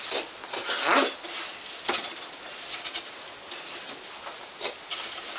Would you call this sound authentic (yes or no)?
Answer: yes